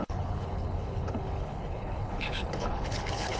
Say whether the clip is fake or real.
fake